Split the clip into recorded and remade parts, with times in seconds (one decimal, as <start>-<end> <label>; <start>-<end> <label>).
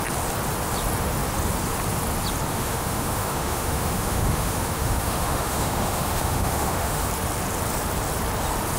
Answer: 0.0-2.5 recorded; 2.5-7.1 remade; 7.1-8.8 recorded